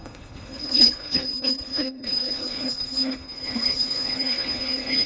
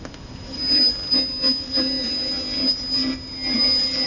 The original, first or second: second